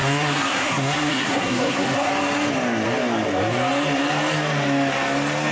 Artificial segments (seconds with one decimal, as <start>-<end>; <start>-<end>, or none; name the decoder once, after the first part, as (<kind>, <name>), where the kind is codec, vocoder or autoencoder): 0.0-2.1 (codec, SNAC)